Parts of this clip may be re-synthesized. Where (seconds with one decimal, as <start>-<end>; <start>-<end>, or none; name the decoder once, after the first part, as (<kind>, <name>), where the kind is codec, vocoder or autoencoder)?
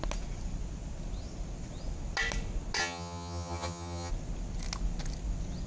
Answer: 2.8-4.1 (vocoder, HiFi-GAN)